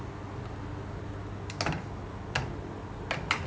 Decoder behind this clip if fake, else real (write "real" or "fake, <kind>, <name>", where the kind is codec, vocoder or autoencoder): real